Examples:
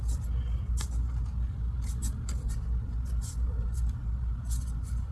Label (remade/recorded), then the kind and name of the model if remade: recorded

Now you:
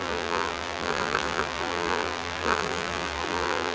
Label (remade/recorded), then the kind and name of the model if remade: remade, vocoder, BigVGAN v2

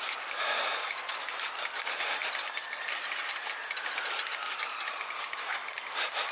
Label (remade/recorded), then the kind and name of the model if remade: recorded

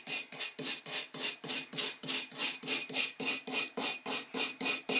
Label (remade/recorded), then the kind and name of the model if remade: recorded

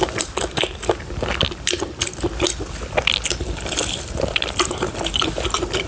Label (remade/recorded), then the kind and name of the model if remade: remade, vocoder, BigVGAN v2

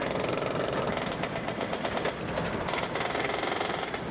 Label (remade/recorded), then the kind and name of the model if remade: remade, vocoder, BigVGAN v2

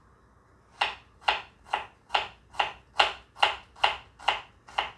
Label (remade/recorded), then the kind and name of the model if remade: recorded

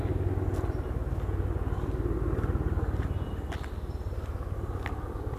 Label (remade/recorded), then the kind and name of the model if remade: recorded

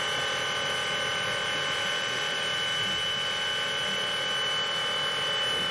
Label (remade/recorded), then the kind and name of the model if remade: recorded